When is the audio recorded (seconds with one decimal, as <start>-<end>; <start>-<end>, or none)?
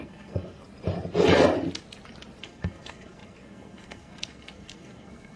0.6-2.4